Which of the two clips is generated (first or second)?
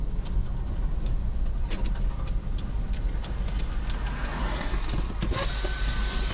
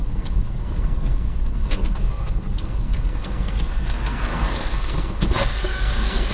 second